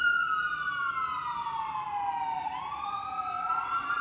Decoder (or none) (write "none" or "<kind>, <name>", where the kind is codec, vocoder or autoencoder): none